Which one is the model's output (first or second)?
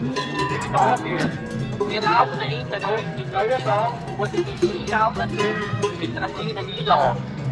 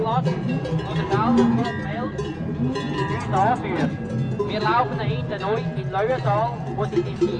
first